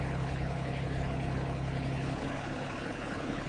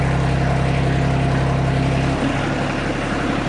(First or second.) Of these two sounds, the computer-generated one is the first